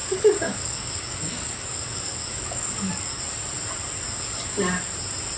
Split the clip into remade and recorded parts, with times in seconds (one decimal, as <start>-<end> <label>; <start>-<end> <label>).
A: 0.0-3.2 remade; 3.2-5.4 recorded